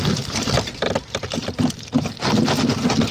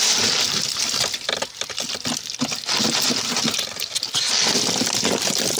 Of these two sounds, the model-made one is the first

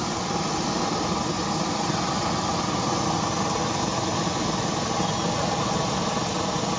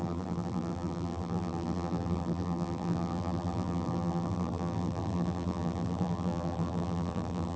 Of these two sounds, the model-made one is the second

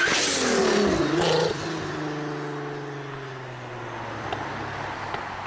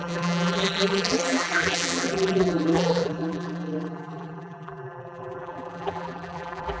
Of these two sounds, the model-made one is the second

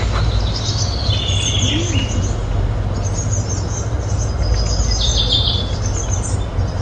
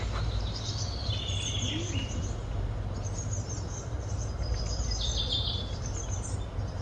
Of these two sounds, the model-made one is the second